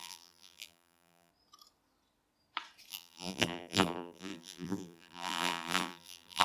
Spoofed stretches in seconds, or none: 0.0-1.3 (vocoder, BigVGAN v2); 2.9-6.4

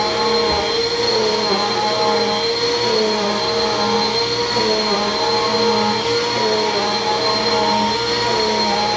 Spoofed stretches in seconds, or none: none

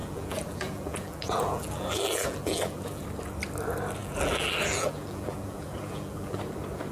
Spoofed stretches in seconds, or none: 0.0-3.0 (vocoder, BigVGAN v2); 4.0-6.4

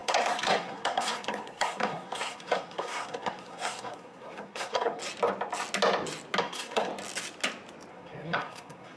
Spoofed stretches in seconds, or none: 0.0-5.0 (codec, SNAC); 6.4-6.9; 7.9-9.0

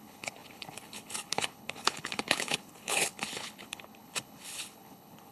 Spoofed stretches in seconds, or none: 0.0-5.3 (codec, HILCodec)